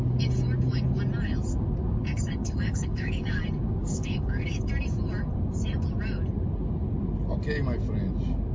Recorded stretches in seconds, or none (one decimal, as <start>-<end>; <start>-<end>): 0.0-2.4; 3.4-3.8; 4.7-8.5